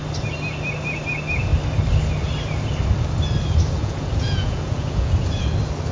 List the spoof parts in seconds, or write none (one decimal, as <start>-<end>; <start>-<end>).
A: 3.8-5.4